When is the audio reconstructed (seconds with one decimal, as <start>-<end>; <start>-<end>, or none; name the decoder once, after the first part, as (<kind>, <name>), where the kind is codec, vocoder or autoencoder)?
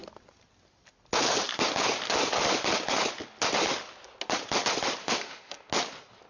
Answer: 5.0-5.7 (autoencoder, DAC-VAE)